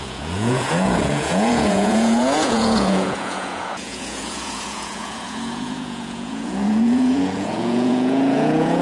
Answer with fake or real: fake